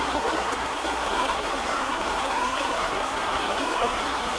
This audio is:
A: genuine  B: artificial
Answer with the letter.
B